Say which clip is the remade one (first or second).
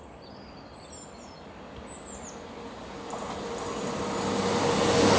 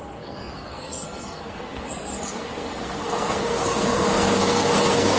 second